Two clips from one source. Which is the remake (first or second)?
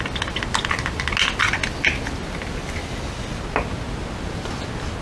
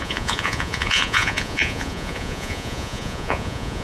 second